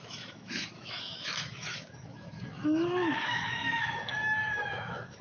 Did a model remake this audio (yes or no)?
yes